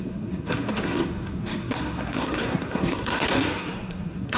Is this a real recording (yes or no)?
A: no